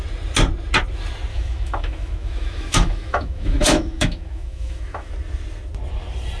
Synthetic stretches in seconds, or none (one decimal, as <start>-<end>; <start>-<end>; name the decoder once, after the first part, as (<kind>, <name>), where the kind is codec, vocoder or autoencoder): 1.3-5.1 (autoencoder, DAC-VAE)